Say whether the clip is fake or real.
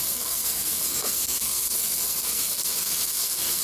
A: fake